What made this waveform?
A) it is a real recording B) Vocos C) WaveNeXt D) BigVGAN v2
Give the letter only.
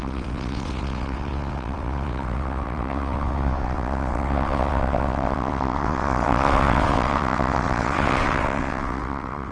C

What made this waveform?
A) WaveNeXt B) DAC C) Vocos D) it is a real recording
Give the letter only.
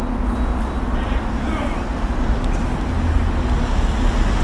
D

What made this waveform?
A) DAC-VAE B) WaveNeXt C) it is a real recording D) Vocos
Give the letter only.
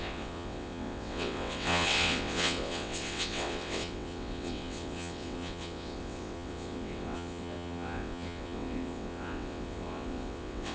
B